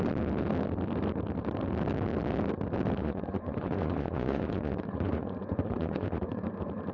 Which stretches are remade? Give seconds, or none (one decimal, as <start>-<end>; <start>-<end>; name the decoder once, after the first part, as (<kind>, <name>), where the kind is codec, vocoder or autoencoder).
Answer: 3.0-6.5 (vocoder, Vocos)

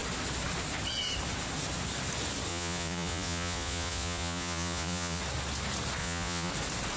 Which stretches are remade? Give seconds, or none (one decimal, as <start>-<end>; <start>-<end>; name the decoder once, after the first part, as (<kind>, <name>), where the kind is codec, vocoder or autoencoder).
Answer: 2.5-5.2 (vocoder, Vocos); 6.0-6.5

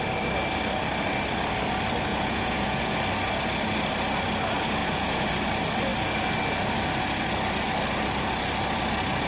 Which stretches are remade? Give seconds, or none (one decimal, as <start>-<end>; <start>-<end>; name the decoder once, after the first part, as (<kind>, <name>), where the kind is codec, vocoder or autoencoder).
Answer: 2.1-3.0 (vocoder, Vocos); 4.8-5.3

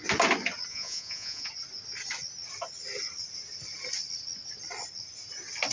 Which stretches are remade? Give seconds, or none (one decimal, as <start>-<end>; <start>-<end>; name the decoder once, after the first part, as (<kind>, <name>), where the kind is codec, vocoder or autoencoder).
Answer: 0.7-1.5 (vocoder, Vocos)